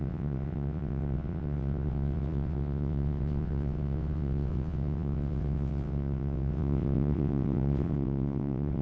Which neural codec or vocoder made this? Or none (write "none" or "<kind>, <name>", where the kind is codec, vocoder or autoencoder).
vocoder, WaveNeXt